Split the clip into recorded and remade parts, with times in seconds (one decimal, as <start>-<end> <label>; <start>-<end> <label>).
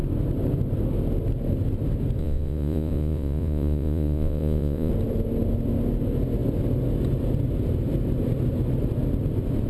0.0-2.2 recorded; 2.2-4.9 remade; 4.9-9.7 recorded